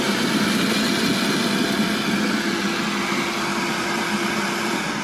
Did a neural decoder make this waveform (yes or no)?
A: no